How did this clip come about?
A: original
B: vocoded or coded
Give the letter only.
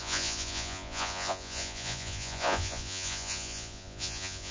B